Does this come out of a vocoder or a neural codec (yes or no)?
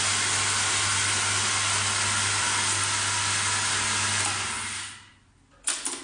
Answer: no